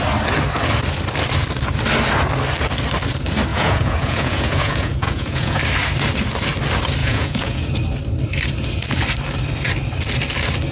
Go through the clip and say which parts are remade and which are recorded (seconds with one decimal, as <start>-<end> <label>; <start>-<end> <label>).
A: 0.0-3.5 recorded; 3.5-5.6 remade; 5.6-7.0 recorded; 7.0-7.7 remade; 7.7-10.7 recorded

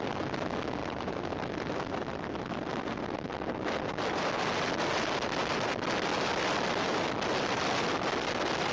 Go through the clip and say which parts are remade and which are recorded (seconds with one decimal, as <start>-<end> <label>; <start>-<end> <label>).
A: 0.0-0.8 recorded; 0.8-3.3 remade; 3.3-8.7 recorded